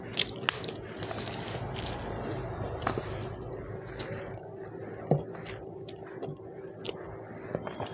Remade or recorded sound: recorded